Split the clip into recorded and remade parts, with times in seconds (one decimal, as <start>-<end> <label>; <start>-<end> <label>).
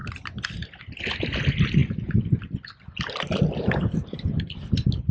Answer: 0.0-5.1 recorded